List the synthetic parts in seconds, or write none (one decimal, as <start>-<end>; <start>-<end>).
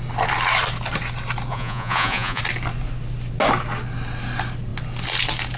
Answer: 1.5-2.4